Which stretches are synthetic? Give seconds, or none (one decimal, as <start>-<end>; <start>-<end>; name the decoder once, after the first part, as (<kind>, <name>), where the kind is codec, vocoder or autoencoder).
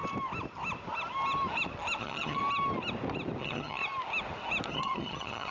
2.0-2.4 (vocoder, HiFi-GAN); 3.4-3.8; 4.7-5.5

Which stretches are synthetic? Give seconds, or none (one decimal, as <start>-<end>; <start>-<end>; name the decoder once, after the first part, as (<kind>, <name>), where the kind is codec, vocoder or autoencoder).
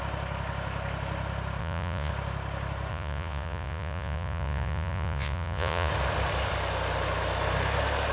1.6-2.1 (vocoder, Vocos); 2.9-5.9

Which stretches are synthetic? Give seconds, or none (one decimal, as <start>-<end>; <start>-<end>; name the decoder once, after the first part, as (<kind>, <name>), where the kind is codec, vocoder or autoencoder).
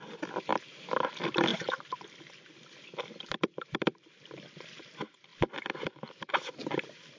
none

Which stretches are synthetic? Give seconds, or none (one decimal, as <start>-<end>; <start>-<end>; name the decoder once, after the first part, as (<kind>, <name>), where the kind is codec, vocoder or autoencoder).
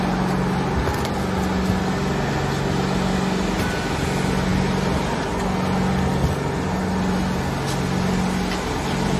none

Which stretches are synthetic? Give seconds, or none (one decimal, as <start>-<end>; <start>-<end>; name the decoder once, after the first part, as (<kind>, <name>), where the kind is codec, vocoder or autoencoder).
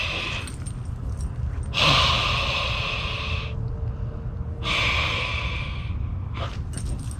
5.1-5.9 (codec, SNAC)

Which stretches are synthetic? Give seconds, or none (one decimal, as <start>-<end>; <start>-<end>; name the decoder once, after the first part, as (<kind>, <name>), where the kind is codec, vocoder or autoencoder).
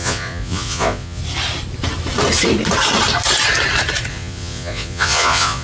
0.0-1.2 (vocoder, Vocos); 4.1-5.6